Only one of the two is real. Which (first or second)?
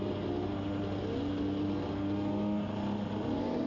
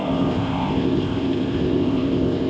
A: first